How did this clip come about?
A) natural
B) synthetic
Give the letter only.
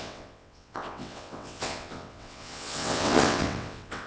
B